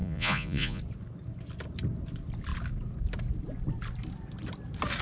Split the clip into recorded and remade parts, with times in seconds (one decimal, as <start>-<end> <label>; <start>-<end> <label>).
0.0-0.8 remade; 0.8-5.0 recorded